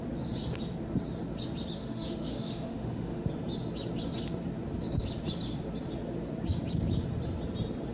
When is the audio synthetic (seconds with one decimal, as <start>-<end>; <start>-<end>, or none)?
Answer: 1.8-3.3